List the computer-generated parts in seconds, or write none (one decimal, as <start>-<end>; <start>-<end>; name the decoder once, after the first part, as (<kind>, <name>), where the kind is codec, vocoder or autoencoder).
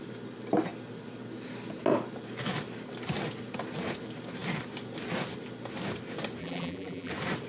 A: 6.4-7.1 (vocoder, BigVGAN v2)